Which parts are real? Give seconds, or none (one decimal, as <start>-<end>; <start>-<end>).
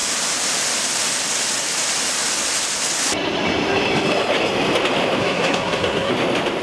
0.0-5.2; 6.1-6.6